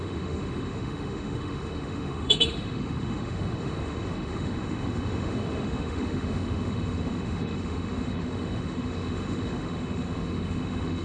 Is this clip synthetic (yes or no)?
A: yes